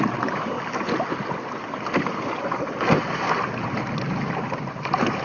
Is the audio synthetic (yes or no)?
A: no